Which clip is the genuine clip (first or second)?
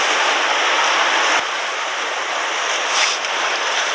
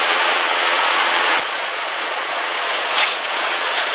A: first